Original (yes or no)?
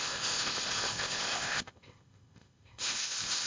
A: no